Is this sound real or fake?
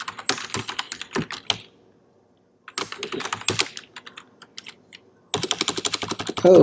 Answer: real